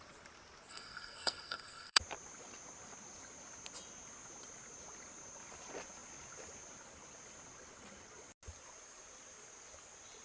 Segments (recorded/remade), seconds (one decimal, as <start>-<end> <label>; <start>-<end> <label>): 0.0-0.7 recorded; 0.7-2.0 remade; 2.0-10.2 recorded